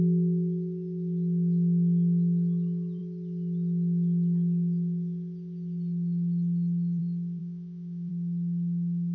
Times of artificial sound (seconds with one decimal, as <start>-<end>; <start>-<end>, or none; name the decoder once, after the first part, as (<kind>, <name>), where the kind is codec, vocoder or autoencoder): 7.4-8.1 (autoencoder, DAC-VAE)